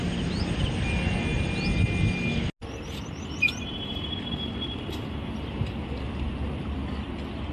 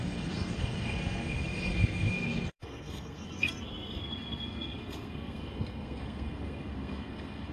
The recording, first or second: first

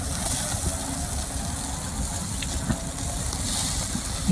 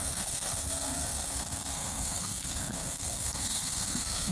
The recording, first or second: first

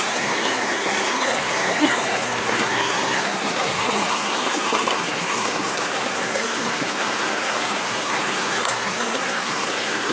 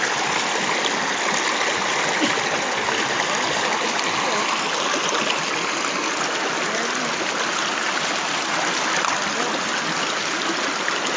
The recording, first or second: second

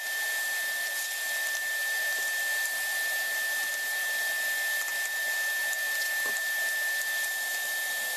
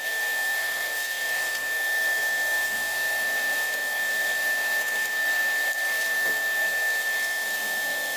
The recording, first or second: first